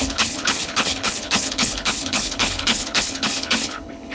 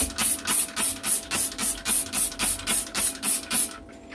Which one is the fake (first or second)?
first